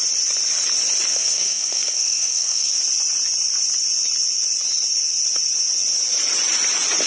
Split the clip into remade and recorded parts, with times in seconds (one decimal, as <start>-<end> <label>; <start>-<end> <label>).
0.0-1.1 recorded; 1.1-2.7 remade; 2.7-7.1 recorded